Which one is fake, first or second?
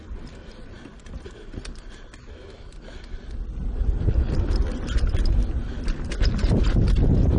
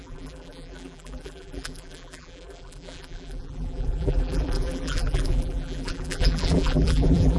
second